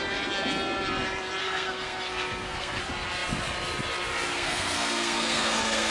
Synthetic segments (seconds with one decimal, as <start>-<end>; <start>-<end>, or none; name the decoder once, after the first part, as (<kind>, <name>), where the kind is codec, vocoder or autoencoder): 1.4-2.8 (codec, SNAC); 4.3-5.9